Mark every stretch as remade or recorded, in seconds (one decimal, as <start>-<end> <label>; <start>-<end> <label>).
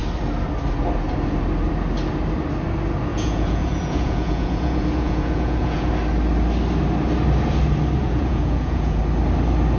0.0-3.1 recorded; 3.1-5.9 remade; 5.9-8.0 recorded; 8.0-9.0 remade; 9.0-9.8 recorded